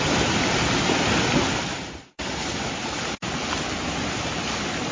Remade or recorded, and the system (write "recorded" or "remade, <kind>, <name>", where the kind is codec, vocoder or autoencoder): recorded